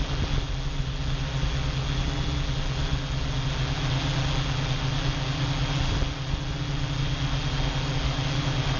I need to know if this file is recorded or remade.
recorded